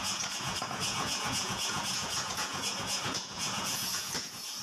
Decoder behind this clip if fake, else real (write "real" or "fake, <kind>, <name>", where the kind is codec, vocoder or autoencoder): fake, vocoder, Vocos